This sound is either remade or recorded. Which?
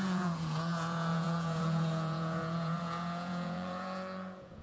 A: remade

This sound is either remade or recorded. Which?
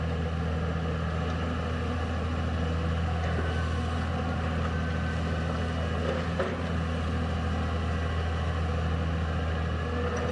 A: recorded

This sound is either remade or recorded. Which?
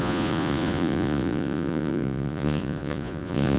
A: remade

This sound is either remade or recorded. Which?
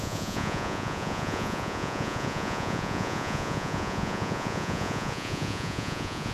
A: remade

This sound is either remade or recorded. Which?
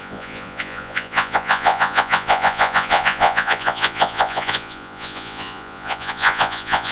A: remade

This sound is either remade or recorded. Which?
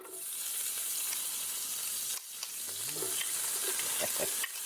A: recorded